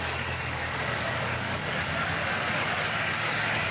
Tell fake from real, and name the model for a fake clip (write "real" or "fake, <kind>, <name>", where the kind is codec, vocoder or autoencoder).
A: fake, codec, DAC